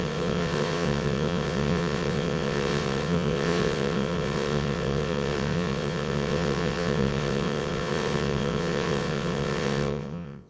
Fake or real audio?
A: fake